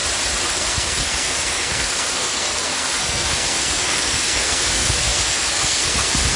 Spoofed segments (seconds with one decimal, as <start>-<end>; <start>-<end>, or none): 0.5-6.4